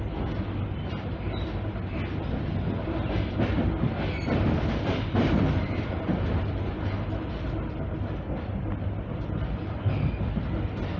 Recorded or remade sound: recorded